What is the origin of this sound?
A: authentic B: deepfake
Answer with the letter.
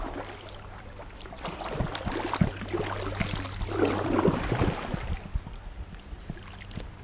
A